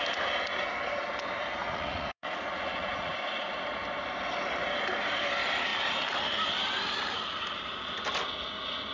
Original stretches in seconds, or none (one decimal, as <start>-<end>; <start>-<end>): 0.0-1.6; 3.1-8.9